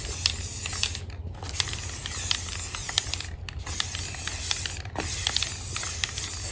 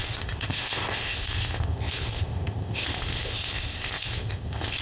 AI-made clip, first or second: second